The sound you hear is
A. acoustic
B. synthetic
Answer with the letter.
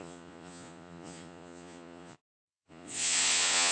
B